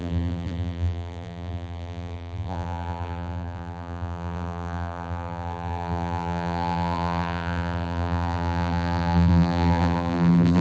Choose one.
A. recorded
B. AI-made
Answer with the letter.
B